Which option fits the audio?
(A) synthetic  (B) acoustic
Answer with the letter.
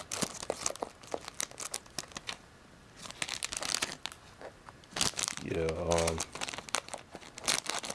B